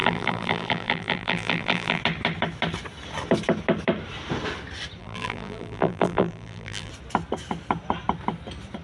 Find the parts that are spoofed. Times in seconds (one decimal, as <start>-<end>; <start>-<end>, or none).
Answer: 0.0-2.0; 5.0-6.9